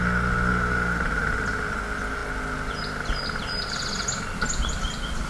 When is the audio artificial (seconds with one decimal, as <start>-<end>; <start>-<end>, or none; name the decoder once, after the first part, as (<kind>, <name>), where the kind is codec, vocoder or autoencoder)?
0.5-1.6 (vocoder, BigVGAN v2)